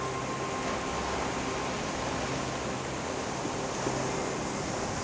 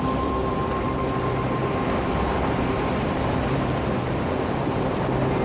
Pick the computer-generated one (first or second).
second